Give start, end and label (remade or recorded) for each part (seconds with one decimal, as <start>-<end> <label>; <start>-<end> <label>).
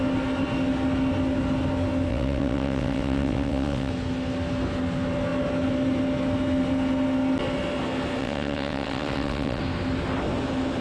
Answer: 0.0-2.1 recorded; 2.1-3.9 remade; 3.9-8.2 recorded; 8.2-9.6 remade; 9.6-10.8 recorded